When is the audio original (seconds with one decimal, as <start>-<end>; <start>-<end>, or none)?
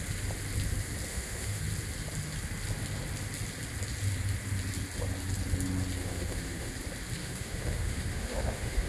0.0-1.1; 1.6-6.0; 6.7-7.2